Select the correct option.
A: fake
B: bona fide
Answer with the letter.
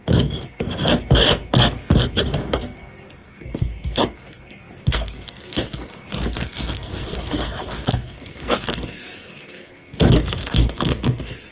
A